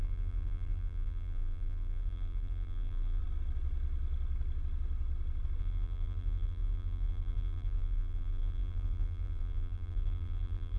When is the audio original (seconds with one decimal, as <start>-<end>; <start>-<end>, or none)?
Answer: 3.2-5.6